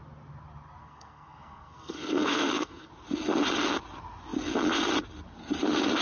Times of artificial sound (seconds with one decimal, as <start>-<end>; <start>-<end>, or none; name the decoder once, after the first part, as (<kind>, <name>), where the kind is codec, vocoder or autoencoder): 0.8-2.9 (codec, SNAC)